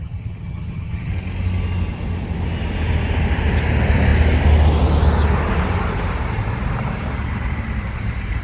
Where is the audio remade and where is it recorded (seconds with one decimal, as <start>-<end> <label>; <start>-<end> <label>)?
0.0-1.1 remade; 1.1-8.4 recorded